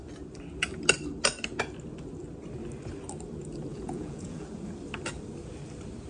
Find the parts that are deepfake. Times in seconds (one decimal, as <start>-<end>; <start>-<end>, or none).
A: 3.7-4.5